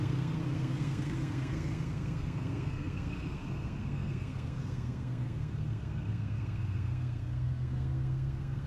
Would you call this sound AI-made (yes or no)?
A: yes